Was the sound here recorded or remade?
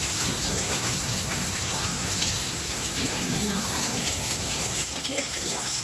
remade